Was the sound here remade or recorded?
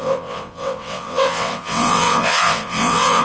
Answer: remade